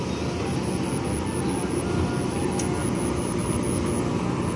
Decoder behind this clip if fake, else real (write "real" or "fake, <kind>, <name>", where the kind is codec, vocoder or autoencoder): real